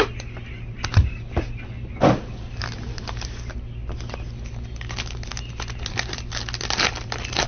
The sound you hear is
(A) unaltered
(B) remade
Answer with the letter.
A